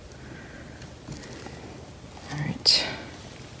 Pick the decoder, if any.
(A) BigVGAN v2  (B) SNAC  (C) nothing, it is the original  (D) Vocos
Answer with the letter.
C